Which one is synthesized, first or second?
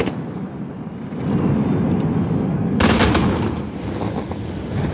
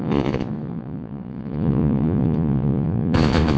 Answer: second